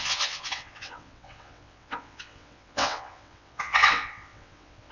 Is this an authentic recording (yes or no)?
no